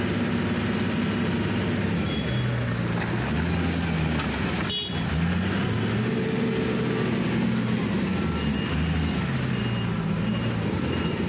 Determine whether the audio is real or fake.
real